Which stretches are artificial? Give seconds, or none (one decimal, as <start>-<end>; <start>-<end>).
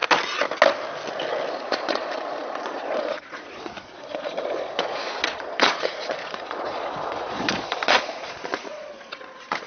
1.5-9.7